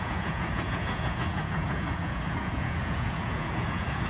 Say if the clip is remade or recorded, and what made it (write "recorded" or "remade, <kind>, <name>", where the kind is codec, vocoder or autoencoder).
remade, vocoder, Vocos